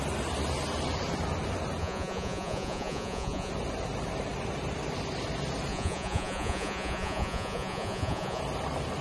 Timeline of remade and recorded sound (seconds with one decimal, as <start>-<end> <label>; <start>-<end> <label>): 0.0-1.8 recorded; 1.8-3.5 remade; 3.5-5.7 recorded; 5.7-8.4 remade; 8.4-9.0 recorded